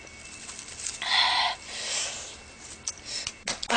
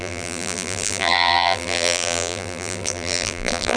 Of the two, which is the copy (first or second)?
second